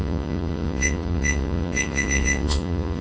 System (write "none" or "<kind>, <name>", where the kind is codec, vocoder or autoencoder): vocoder, Vocos